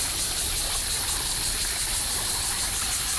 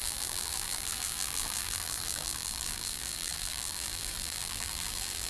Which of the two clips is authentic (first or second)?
first